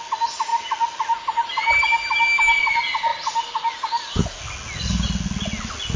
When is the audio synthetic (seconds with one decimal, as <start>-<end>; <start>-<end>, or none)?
none